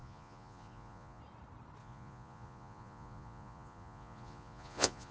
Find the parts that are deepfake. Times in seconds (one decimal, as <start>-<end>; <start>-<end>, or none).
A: 0.0-1.2; 1.8-5.1